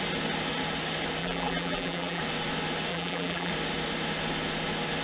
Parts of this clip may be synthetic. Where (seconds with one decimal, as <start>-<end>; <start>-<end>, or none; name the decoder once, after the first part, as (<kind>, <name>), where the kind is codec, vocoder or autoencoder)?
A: 1.2-2.2 (vocoder, BigVGAN v2); 2.9-3.5